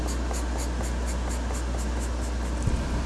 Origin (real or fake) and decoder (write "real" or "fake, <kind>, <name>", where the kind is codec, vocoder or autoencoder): real